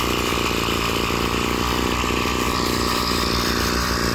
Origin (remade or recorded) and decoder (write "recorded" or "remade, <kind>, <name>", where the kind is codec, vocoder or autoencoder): remade, vocoder, BigVGAN v2